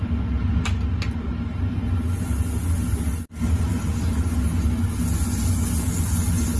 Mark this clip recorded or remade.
recorded